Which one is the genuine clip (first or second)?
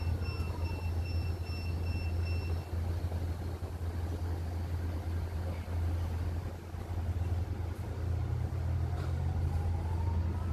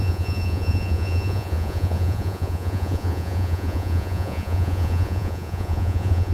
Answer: first